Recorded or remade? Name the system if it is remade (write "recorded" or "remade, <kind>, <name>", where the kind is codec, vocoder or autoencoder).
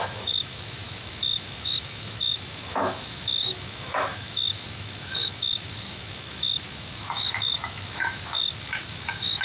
remade, autoencoder, DAC-VAE